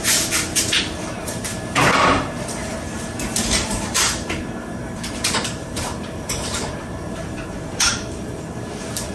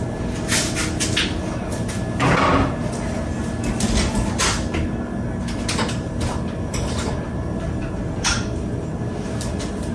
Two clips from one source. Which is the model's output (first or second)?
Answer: first